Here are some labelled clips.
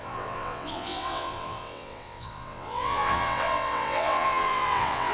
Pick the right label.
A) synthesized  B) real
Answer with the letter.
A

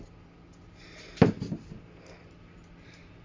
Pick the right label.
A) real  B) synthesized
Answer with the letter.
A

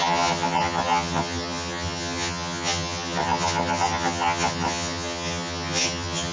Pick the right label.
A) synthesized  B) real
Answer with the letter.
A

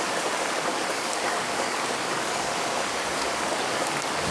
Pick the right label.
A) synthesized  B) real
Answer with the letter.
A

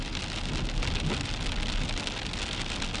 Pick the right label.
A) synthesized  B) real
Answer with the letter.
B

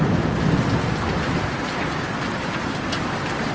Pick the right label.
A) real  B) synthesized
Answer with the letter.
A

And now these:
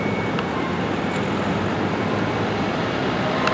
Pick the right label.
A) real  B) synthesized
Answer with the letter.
B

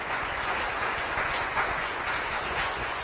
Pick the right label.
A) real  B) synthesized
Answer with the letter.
B